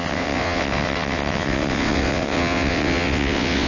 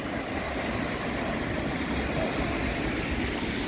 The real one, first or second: second